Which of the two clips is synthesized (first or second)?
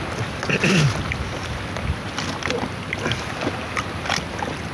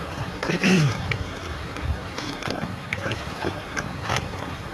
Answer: second